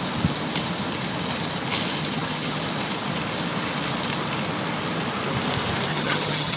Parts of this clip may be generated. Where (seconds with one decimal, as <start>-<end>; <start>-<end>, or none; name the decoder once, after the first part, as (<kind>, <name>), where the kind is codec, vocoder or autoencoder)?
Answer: 2.0-2.6 (vocoder, HiFi-GAN); 5.9-6.6